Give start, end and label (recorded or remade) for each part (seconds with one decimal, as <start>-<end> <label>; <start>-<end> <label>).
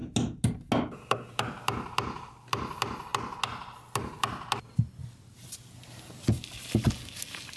0.0-7.6 recorded